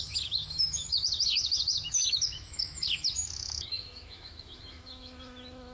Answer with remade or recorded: remade